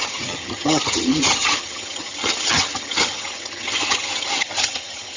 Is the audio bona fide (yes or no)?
no